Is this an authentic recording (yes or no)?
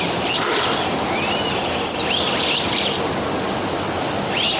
yes